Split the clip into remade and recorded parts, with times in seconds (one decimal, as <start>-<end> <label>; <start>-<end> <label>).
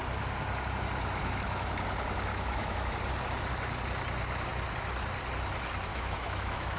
0.0-1.2 recorded; 1.2-1.7 remade; 1.7-2.3 recorded; 2.3-2.9 remade; 2.9-5.9 recorded; 5.9-6.8 remade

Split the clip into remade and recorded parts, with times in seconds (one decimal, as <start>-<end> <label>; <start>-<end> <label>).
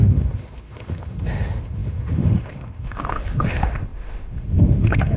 0.0-5.2 remade